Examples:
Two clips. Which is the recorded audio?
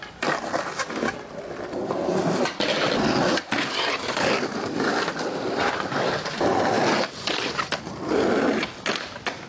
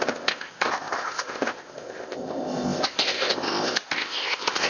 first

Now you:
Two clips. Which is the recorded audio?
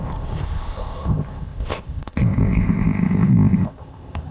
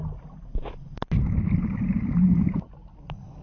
second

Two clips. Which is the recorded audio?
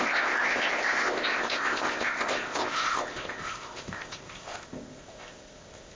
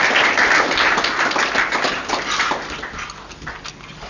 second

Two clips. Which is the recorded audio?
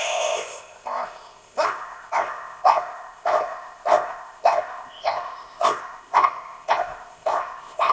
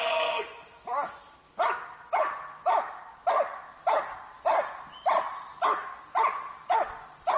second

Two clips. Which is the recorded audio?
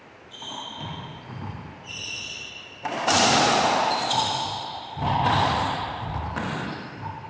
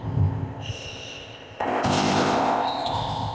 first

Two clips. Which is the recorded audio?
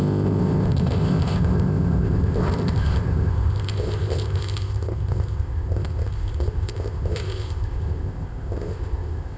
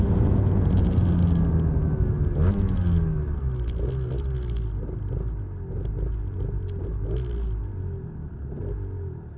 second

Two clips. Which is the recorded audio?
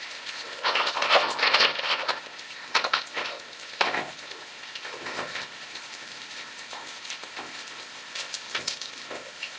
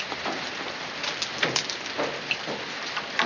second